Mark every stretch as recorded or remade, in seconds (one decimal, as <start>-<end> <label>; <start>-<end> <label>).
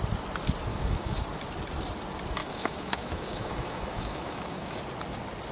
0.0-0.7 recorded; 0.7-1.2 remade; 1.2-2.4 recorded; 2.4-4.8 remade; 4.8-5.5 recorded